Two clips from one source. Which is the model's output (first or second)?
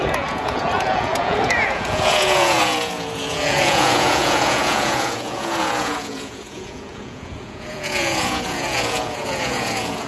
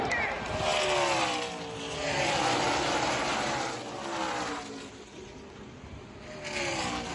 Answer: first